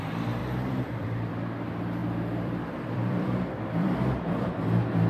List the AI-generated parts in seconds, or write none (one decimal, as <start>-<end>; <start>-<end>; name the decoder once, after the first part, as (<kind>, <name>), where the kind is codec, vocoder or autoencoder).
0.4-1.3 (vocoder, BigVGAN v2); 2.0-4.5